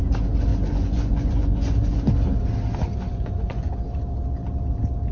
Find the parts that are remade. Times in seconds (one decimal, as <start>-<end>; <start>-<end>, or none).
0.5-2.1; 3.1-3.7